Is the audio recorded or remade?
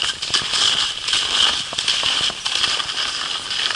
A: recorded